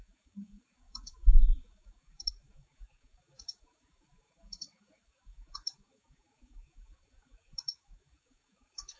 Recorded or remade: remade